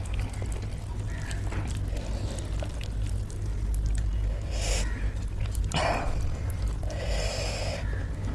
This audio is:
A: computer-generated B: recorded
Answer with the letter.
B